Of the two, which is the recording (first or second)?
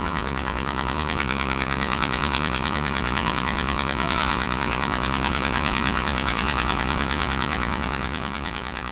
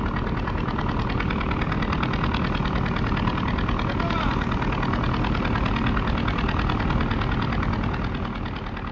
second